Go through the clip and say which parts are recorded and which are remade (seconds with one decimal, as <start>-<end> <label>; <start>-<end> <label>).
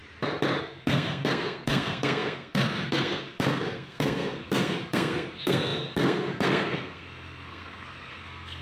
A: 0.0-0.6 recorded; 0.6-8.6 remade